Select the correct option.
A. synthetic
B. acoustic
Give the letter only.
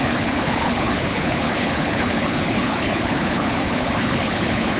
A